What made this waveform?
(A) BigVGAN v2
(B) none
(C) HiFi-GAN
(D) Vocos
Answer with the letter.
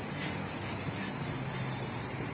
B